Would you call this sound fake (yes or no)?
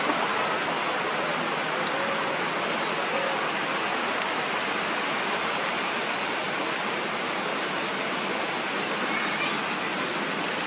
no